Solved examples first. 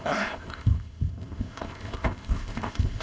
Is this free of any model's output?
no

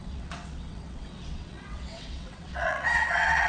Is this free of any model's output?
no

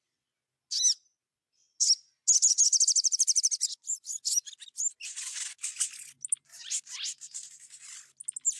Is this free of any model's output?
yes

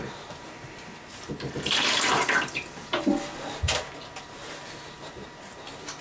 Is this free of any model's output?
no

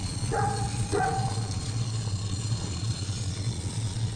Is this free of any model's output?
no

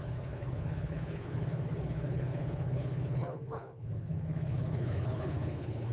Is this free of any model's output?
no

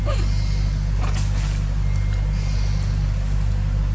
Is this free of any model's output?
yes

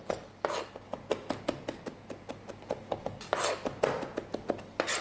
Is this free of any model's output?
yes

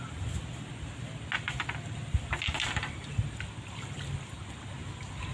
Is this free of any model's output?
yes